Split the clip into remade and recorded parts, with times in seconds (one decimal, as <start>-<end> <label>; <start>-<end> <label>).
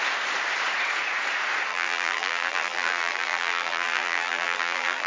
0.0-1.7 recorded; 1.7-5.1 remade